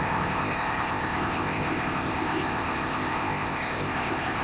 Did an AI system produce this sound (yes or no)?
yes